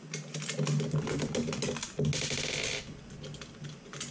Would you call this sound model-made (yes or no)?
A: no